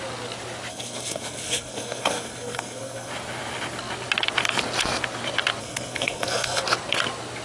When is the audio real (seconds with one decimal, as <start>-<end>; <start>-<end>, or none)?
0.0-0.7; 3.1-5.6; 6.6-7.4